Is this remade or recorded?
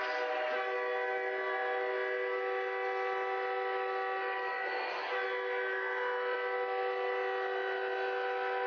recorded